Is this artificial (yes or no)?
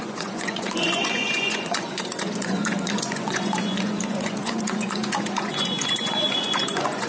yes